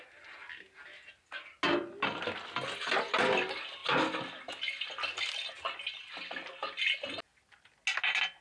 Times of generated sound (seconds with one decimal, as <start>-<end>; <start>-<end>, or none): none